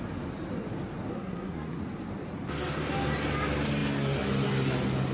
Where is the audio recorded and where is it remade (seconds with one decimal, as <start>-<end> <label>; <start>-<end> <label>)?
0.0-1.1 recorded; 1.1-1.8 remade; 1.8-5.1 recorded